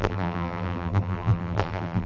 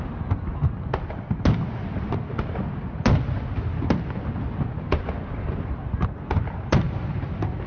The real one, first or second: second